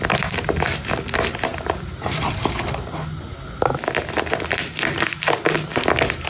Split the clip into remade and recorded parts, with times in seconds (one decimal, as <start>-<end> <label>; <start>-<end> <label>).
0.0-6.3 recorded